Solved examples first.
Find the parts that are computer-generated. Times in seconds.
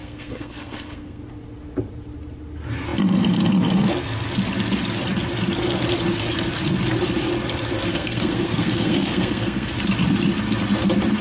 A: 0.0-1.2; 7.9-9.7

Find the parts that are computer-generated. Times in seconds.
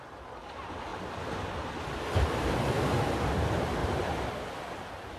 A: 3.8-4.3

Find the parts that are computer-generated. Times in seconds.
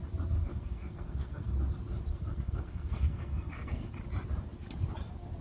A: 0.5-1.5; 2.1-3.9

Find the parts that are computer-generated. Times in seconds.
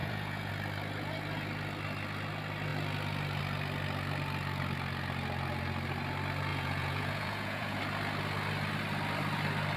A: 0.0-0.5; 6.5-7.8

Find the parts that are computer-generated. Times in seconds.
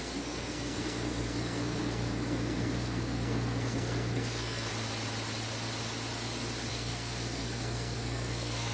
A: 0.0-4.7; 6.7-8.7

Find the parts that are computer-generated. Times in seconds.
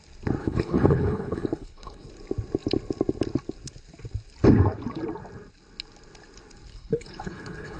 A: 0.4-2.1; 6.7-7.8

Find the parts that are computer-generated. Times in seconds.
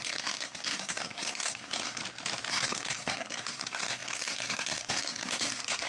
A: 0.0-2.0; 2.5-5.9